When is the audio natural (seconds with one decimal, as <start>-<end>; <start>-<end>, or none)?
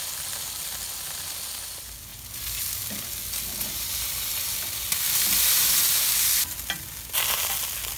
0.0-8.0